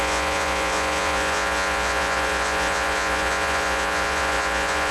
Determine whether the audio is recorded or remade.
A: remade